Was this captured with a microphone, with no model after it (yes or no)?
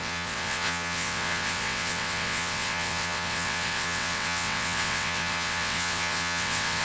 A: no